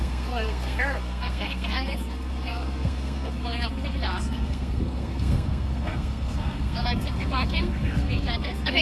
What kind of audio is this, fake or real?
fake